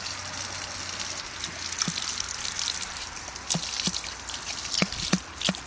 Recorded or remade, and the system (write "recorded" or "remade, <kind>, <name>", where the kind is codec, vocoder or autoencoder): recorded